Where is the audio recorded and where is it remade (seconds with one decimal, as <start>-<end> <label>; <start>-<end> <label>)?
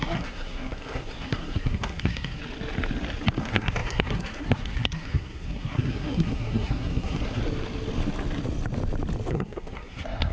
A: 0.0-2.4 remade; 2.4-3.4 recorded; 3.4-7.4 remade; 7.4-9.3 recorded; 9.3-10.3 remade